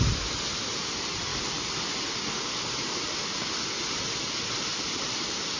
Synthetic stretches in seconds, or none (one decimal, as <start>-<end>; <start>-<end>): none